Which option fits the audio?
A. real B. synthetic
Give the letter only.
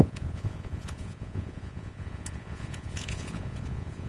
B